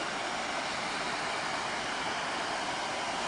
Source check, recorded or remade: recorded